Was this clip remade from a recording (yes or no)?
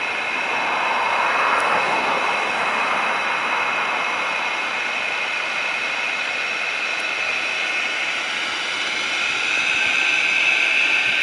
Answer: no